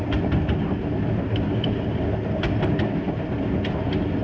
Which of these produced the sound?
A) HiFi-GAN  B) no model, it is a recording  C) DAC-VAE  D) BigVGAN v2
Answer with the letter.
B